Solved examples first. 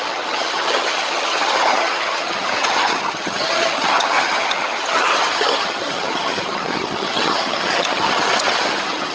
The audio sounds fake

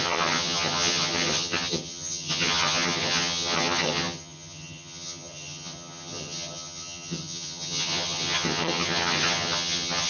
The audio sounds fake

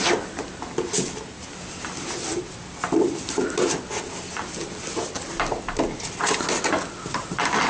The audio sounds real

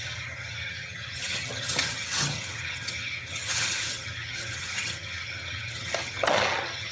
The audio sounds fake